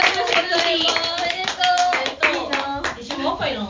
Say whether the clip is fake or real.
fake